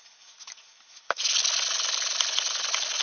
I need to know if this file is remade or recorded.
recorded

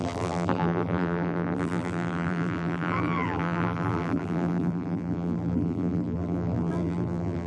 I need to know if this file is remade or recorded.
remade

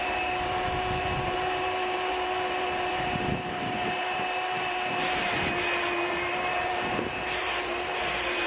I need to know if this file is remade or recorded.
remade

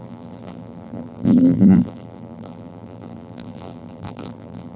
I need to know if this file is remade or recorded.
remade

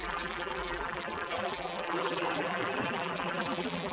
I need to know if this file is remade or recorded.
remade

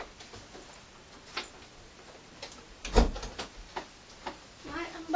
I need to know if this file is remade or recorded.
recorded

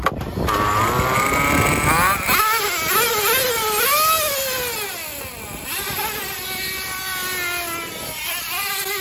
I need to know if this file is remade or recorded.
recorded